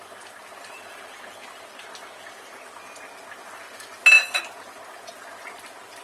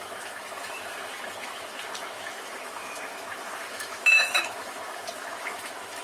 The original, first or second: first